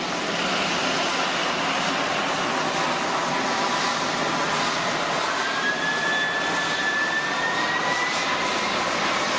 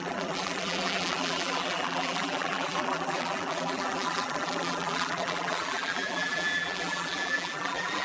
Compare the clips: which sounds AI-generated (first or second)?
second